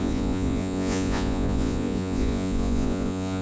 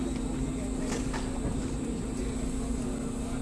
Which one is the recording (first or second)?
second